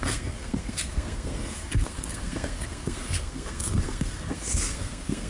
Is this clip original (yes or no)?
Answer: no